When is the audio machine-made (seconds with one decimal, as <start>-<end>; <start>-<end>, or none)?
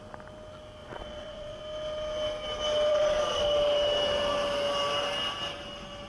0.8-1.6; 2.9-3.4